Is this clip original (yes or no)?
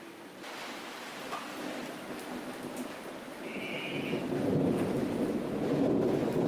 yes